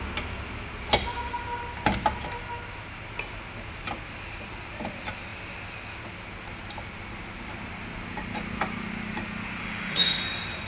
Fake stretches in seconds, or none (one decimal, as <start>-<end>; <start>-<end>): 9.6-10.2